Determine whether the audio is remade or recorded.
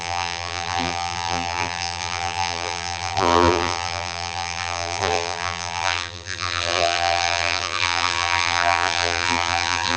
remade